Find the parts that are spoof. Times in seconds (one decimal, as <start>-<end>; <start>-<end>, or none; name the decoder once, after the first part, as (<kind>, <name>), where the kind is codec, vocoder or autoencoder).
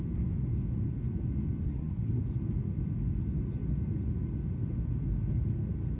1.6-2.2 (codec, SNAC)